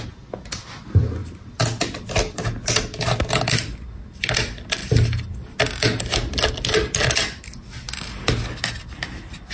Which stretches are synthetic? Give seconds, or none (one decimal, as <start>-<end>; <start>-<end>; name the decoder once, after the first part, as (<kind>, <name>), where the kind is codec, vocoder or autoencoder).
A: none